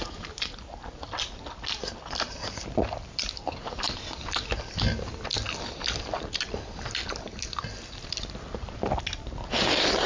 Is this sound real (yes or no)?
yes